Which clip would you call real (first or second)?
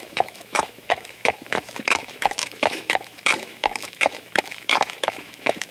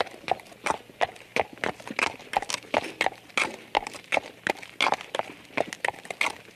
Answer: second